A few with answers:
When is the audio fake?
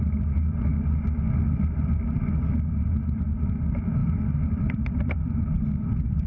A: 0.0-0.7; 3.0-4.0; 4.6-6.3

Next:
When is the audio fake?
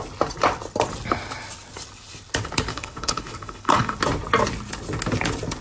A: 2.7-4.0